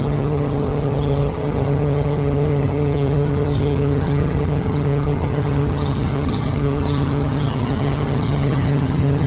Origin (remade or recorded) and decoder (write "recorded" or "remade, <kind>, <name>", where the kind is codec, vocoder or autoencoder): remade, vocoder, HiFi-GAN